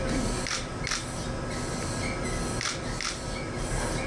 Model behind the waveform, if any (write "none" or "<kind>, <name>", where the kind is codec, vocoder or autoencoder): none